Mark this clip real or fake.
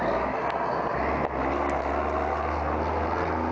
real